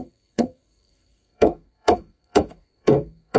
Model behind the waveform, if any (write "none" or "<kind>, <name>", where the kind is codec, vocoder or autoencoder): codec, SNAC